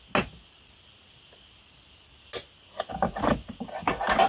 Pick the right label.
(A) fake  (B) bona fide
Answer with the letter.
B